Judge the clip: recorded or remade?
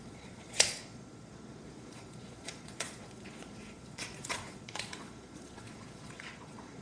remade